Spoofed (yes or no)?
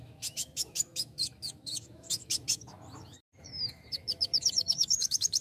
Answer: yes